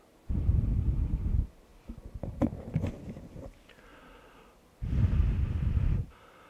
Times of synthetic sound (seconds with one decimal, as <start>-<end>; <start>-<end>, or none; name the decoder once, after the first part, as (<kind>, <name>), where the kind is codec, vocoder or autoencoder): 3.9-5.7 (vocoder, BigVGAN v2)